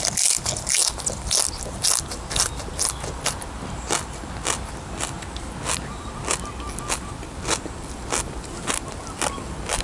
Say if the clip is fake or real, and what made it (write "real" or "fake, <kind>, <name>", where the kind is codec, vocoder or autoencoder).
real